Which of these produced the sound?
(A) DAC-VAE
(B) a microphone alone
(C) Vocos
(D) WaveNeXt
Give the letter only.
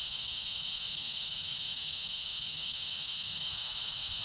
A